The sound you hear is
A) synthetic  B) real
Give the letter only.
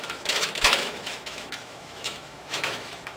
A